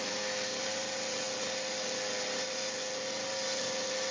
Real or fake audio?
real